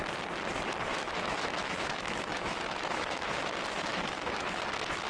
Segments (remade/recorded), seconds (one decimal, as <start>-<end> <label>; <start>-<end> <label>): 0.0-0.9 recorded; 0.9-3.4 remade; 3.4-3.9 recorded; 3.9-4.6 remade; 4.6-5.1 recorded